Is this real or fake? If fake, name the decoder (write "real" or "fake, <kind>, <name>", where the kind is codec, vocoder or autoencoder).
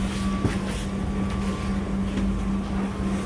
real